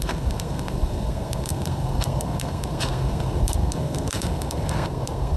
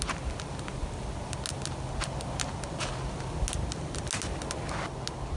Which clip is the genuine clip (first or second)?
second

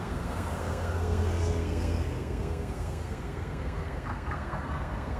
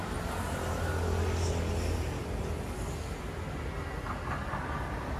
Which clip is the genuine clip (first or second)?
second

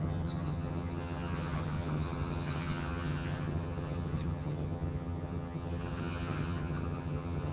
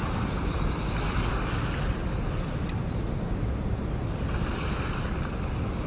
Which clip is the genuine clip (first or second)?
second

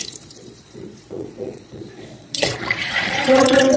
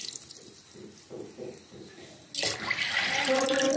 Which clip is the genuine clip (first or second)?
second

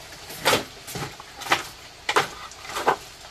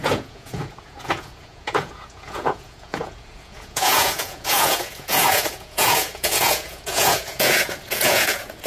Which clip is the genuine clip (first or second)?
first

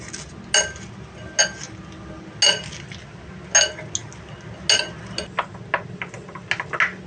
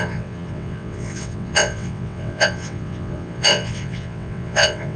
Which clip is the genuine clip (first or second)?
first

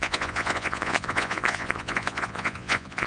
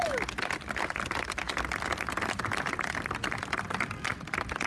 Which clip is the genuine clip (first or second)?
second